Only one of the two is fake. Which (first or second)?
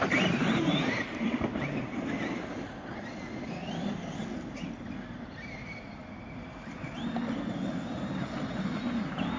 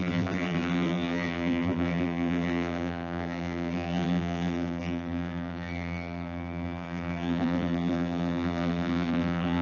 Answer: second